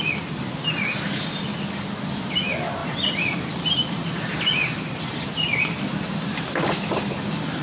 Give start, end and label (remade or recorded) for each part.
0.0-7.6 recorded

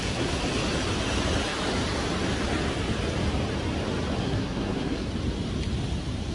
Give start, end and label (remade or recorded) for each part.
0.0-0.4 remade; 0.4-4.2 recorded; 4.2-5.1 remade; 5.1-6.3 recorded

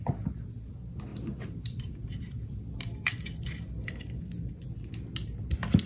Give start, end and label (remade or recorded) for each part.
0.0-1.1 recorded; 1.1-4.5 remade; 4.5-5.9 recorded

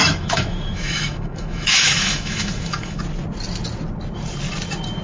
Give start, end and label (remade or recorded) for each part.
0.0-3.0 remade; 3.0-5.0 recorded